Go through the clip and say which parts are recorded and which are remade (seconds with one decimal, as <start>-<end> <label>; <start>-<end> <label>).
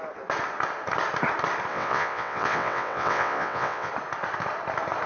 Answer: 0.0-1.7 recorded; 1.7-3.9 remade; 3.9-5.1 recorded